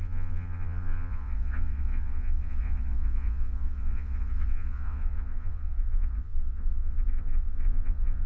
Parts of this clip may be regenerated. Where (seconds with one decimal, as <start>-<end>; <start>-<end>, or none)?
0.0-8.3